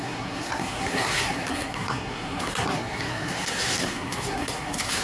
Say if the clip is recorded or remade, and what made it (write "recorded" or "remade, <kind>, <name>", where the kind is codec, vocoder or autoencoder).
remade, codec, SNAC